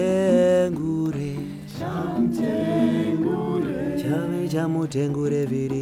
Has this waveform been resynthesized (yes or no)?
no